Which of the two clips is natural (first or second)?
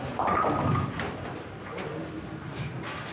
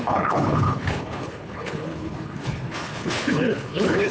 first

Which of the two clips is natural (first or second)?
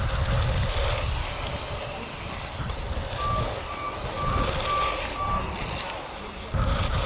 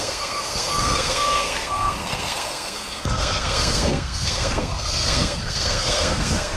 first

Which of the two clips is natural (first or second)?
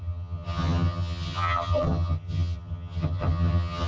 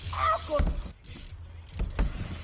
second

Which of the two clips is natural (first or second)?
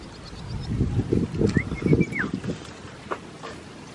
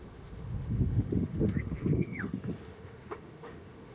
first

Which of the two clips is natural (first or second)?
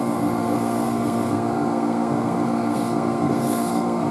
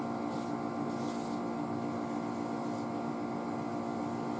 second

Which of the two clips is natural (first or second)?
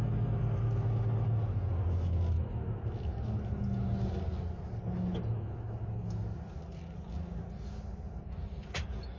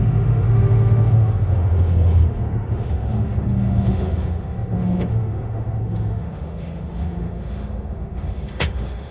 first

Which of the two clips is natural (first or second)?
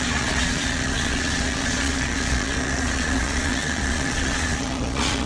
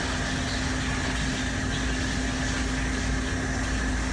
second